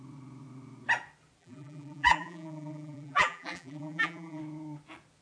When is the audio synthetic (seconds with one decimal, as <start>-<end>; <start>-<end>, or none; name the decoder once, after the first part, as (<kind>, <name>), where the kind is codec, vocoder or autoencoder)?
1.4-4.4 (vocoder, BigVGAN v2)

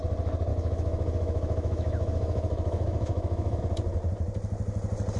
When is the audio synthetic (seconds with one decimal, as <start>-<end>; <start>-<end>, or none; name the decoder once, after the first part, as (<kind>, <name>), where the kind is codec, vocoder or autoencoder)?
0.5-3.6 (autoencoder, DAC-VAE)

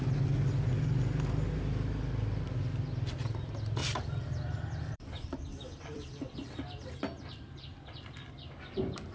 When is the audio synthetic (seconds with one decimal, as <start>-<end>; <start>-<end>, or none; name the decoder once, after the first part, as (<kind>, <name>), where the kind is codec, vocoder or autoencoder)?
3.8-8.3 (vocoder, BigVGAN v2)

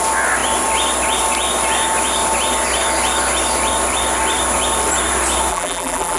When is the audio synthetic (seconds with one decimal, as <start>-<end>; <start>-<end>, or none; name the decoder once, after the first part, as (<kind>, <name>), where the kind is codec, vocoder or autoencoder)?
5.5-6.2 (vocoder, BigVGAN v2)

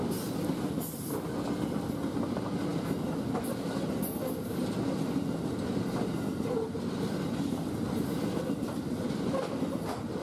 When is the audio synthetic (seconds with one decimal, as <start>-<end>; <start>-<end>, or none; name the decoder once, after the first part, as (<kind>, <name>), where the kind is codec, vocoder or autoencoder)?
none

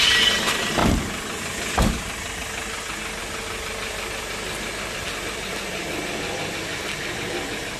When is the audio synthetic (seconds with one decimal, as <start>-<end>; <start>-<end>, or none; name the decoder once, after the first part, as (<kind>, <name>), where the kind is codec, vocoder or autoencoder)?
none